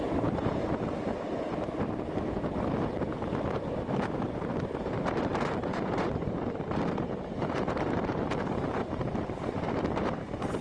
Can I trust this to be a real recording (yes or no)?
no